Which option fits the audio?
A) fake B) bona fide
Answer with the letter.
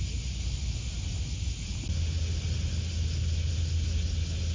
B